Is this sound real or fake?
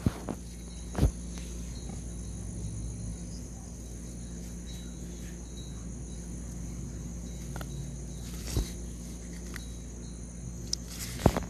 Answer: real